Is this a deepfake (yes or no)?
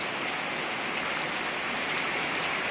no